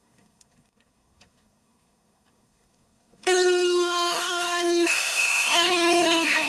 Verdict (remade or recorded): remade